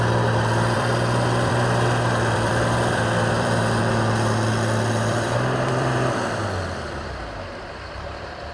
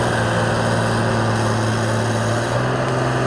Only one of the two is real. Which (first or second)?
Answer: second